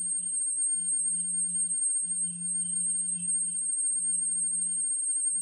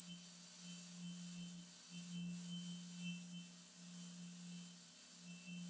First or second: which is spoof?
first